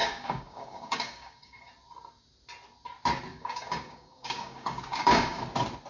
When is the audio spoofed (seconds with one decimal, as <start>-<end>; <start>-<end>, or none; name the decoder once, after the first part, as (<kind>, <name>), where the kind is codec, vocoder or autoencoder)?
0.0-1.7 (codec, DAC); 3.3-5.4